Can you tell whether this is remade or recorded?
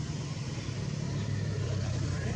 remade